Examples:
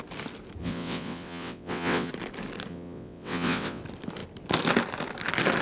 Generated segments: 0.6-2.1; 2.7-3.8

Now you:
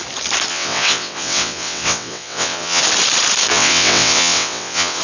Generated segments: 0.5-2.8; 3.5-5.0

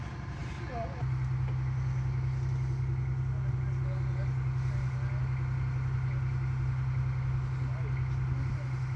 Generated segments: none

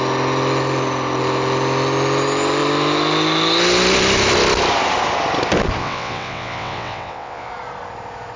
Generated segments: 5.8-7.5